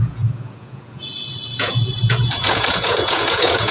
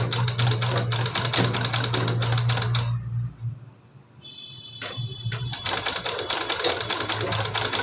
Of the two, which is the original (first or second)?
second